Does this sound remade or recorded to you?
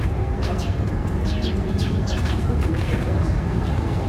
remade